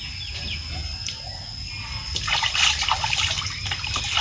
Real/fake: real